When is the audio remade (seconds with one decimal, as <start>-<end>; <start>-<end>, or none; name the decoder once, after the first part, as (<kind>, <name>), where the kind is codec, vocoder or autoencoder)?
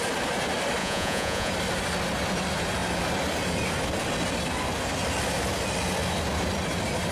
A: 0.8-1.5 (vocoder, Vocos)